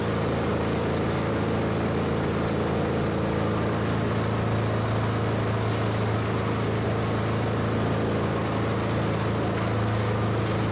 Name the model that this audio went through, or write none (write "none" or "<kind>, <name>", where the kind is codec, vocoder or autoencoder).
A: none